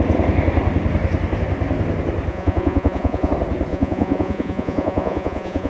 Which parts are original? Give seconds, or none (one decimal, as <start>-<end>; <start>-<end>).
0.0-2.3; 3.3-3.7